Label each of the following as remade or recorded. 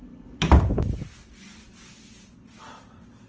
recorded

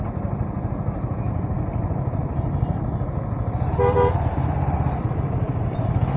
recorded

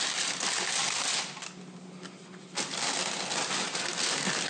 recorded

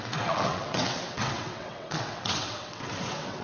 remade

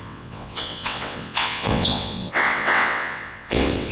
remade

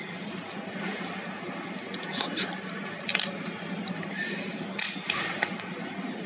recorded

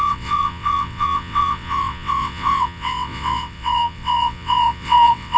remade